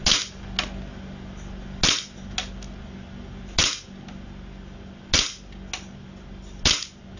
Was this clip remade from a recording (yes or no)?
no